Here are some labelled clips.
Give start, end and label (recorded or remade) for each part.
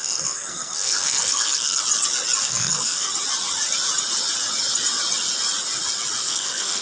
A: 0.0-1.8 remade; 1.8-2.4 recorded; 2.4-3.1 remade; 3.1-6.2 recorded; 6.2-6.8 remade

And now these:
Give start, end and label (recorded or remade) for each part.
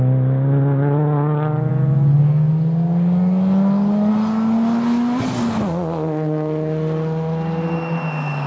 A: 0.0-8.5 recorded